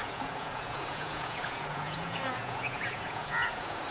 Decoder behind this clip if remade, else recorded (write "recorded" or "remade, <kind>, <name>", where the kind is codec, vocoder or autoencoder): remade, vocoder, Vocos